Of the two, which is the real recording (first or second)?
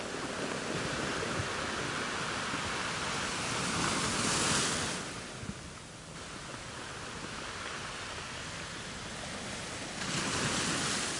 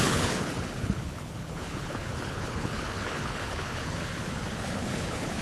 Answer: first